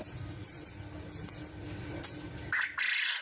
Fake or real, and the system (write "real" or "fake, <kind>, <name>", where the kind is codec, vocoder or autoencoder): real